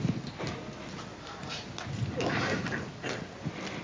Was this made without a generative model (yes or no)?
yes